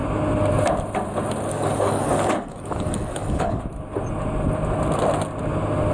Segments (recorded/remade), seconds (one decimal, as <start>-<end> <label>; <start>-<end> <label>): 0.0-1.5 recorded; 1.5-3.6 remade; 3.6-5.9 recorded